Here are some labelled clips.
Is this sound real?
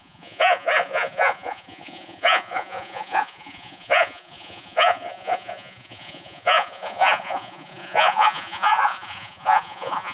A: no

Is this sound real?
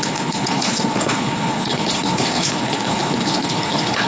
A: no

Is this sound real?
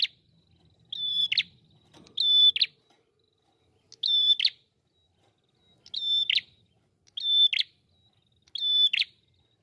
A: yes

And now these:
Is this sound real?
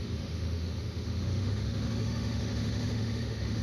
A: no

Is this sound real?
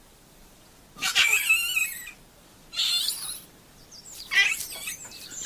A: yes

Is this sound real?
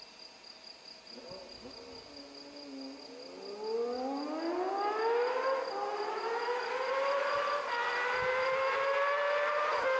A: yes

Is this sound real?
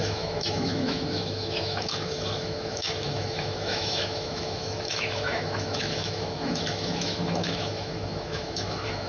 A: no